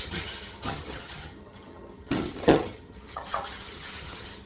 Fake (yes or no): yes